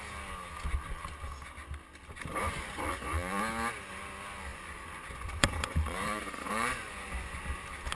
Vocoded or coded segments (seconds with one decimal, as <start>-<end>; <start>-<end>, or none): 2.3-3.4; 4.5-7.4